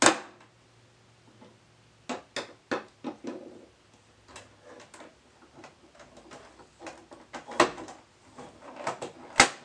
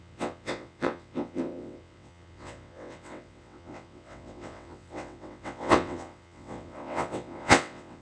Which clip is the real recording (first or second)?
first